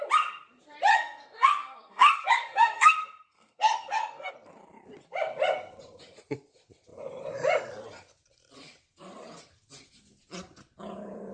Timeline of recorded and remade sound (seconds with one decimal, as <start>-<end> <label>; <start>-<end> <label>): 0.0-0.9 recorded; 0.9-4.3 remade; 4.3-11.3 recorded